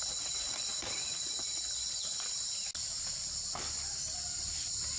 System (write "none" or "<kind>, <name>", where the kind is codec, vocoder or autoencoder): none